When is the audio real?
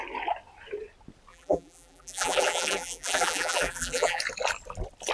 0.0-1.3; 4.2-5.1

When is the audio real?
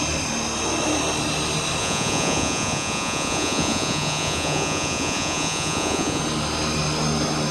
0.0-1.8; 6.2-7.5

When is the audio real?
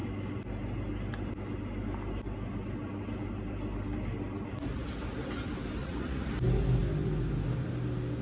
0.0-5.8; 6.3-8.2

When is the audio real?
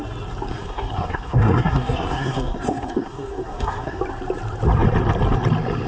0.0-0.5; 4.0-5.9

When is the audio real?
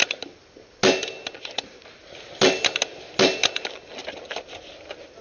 0.0-5.2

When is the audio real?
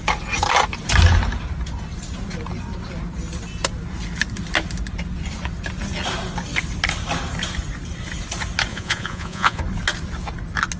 0.0-8.7; 9.6-10.8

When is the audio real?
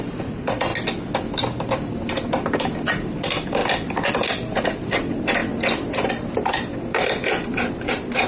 0.7-1.3; 3.6-4.1; 5.4-6.1